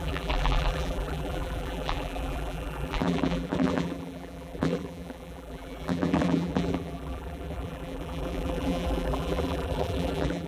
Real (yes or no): no